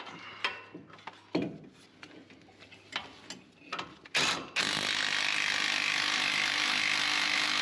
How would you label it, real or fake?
real